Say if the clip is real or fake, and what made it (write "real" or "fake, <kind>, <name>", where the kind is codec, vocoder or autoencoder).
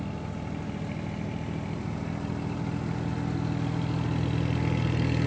real